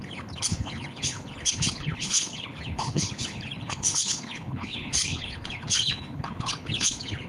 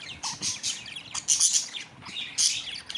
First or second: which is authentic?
second